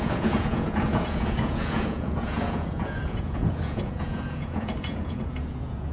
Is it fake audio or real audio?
fake